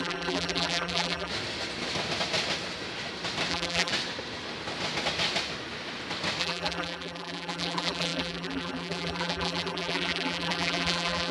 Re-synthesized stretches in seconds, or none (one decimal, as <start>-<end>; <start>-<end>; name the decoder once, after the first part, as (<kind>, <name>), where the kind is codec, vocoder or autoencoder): 0.0-1.3 (vocoder, BigVGAN v2); 3.5-3.9; 6.4-11.3